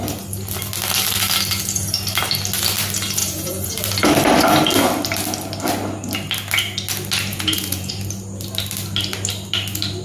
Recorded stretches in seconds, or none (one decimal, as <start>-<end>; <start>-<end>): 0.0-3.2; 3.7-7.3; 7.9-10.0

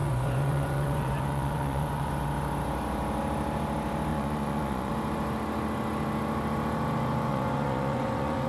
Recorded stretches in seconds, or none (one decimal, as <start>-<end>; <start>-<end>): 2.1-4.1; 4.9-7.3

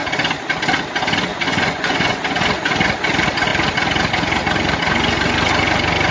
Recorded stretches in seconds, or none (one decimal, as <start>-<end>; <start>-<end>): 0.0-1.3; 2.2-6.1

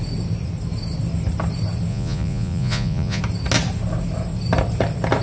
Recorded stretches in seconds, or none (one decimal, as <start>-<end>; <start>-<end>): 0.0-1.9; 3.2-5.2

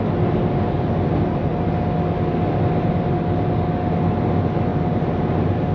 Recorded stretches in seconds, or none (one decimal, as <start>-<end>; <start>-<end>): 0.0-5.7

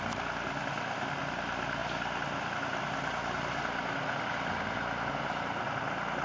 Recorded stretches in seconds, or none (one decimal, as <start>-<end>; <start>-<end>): 0.0-6.2

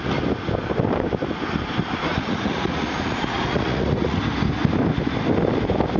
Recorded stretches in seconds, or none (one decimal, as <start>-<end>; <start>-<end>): 0.0-2.1; 4.2-6.0